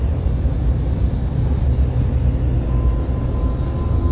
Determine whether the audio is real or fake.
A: real